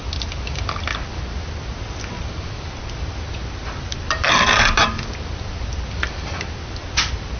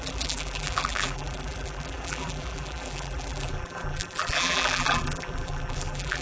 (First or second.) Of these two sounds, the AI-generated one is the second